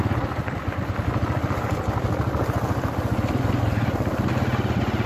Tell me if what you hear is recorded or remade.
recorded